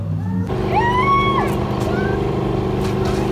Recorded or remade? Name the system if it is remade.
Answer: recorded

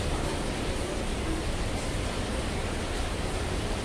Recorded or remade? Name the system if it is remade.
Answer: recorded